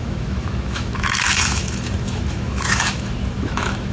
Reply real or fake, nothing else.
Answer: fake